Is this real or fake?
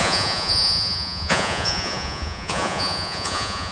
fake